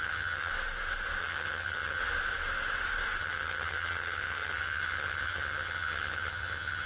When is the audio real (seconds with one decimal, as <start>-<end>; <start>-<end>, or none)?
0.5-1.2; 2.0-3.2